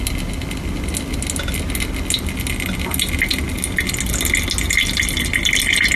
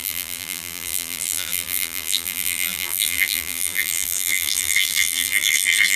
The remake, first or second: second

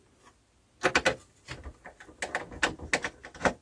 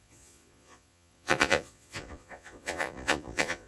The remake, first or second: second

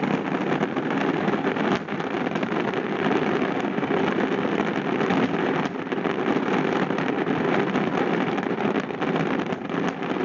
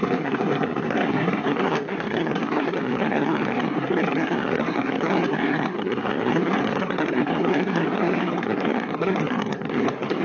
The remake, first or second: second